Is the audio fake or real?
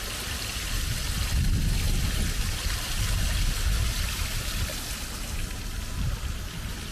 real